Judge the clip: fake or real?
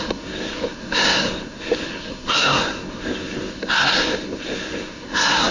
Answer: fake